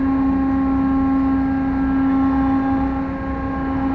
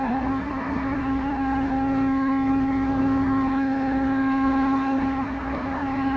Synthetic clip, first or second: second